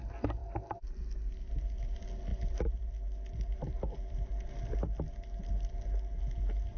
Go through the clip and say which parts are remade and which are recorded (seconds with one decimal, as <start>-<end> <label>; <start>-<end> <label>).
0.0-6.8 recorded